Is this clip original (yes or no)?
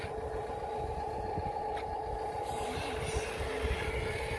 yes